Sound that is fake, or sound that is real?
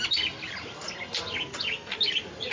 real